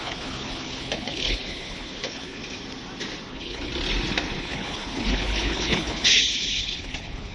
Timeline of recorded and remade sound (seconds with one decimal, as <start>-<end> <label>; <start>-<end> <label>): 0.0-2.4 remade; 2.4-3.3 recorded; 3.3-3.7 remade; 3.7-4.4 recorded; 4.4-7.3 remade